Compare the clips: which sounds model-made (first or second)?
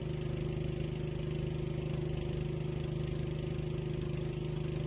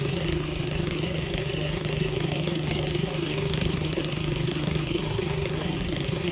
second